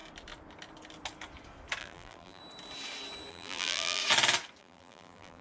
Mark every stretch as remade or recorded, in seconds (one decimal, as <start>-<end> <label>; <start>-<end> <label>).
0.0-1.8 recorded; 1.8-2.4 remade; 2.4-3.3 recorded; 3.3-4.0 remade; 4.0-4.6 recorded; 4.6-5.4 remade